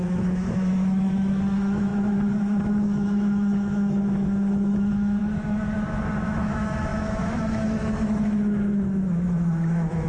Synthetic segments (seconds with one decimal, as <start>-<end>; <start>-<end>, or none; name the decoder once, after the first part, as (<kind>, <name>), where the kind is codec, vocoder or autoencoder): 0.0-10.1 (autoencoder, DAC-VAE)